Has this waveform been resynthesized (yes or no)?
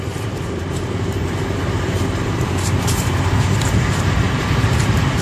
yes